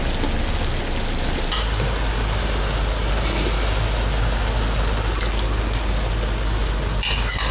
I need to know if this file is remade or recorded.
recorded